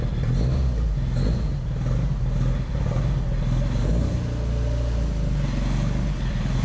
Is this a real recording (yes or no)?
yes